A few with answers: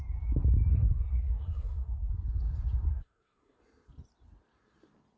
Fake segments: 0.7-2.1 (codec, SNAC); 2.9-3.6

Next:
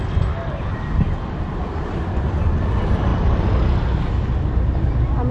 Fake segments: none